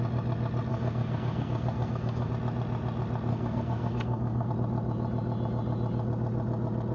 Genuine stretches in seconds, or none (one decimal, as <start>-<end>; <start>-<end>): 0.0-0.7; 2.3-3.3; 4.5-6.9